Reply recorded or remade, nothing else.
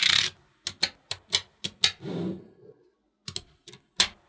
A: recorded